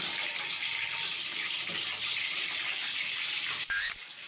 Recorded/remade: recorded